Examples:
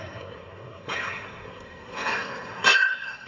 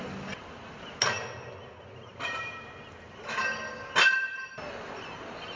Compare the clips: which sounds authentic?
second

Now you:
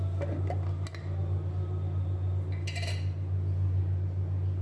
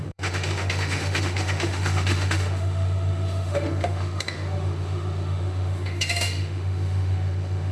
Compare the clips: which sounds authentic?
first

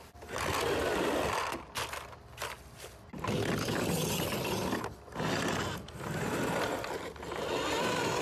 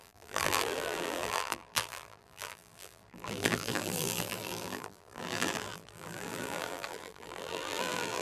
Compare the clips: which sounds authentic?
first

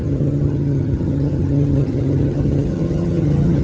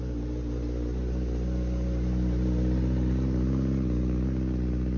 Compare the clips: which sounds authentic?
second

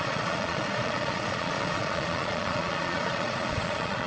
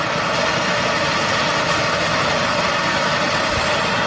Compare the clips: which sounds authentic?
second